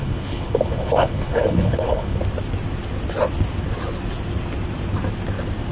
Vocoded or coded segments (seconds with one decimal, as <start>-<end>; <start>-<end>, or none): 0.0-2.2